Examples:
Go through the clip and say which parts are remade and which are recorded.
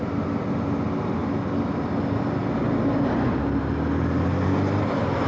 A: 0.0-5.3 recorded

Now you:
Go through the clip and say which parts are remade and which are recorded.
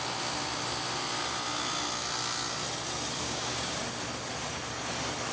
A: 0.0-3.2 recorded; 3.2-3.8 remade; 3.8-5.3 recorded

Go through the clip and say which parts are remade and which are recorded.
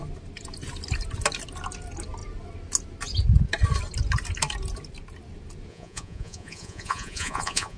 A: 0.0-5.7 recorded; 5.7-7.8 remade